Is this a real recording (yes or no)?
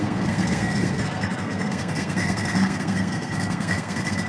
no